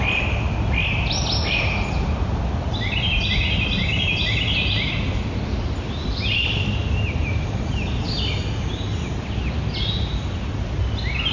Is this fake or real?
real